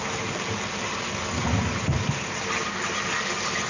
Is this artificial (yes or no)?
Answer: no